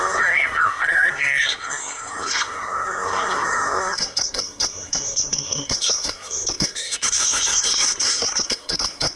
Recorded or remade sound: remade